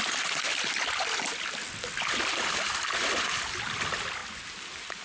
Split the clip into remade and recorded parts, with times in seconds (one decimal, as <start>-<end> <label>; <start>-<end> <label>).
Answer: 0.0-5.0 recorded